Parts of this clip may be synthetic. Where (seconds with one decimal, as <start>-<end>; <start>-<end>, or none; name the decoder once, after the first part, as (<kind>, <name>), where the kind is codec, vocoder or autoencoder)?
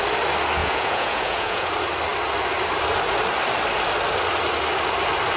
0.6-1.7 (vocoder, Vocos)